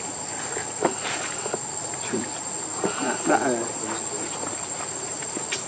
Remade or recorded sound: recorded